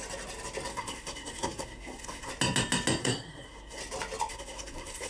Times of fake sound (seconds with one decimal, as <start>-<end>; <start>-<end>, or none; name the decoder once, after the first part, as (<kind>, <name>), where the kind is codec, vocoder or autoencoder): 0.7-2.3 (codec, SNAC); 3.0-3.8; 4.3-5.1